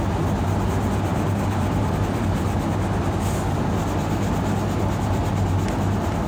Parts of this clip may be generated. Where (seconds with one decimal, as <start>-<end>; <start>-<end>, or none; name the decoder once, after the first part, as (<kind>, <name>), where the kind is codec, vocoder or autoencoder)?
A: none